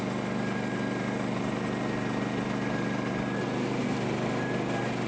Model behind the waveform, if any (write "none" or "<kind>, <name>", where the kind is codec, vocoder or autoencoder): none